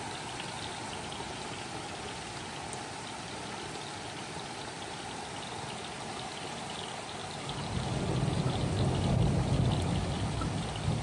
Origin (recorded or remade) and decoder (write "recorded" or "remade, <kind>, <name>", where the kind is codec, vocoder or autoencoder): recorded